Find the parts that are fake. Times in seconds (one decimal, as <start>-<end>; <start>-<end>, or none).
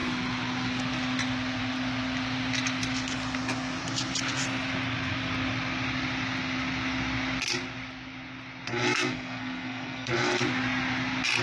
8.7-10.4